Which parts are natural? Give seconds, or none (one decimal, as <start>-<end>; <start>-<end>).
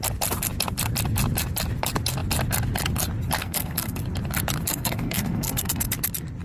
0.0-3.4; 4.0-4.7; 5.9-6.4